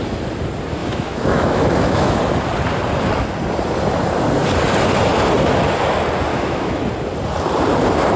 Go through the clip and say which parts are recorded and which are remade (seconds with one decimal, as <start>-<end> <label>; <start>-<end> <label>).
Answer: 0.0-0.8 recorded; 0.8-2.2 remade; 2.2-6.3 recorded; 6.3-6.9 remade; 6.9-8.2 recorded